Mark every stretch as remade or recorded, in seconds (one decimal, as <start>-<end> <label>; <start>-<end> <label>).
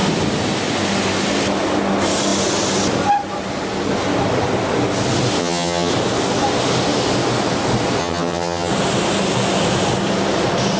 0.0-5.4 recorded; 5.4-5.9 remade; 5.9-8.0 recorded; 8.0-8.7 remade; 8.7-10.8 recorded